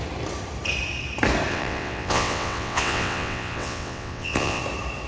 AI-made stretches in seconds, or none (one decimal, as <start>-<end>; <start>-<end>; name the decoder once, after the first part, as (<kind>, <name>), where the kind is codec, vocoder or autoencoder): 1.5-4.6 (vocoder, WaveNeXt)